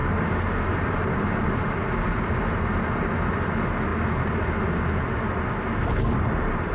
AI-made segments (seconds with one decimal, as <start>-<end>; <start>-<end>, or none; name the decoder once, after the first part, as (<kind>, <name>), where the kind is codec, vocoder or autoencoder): none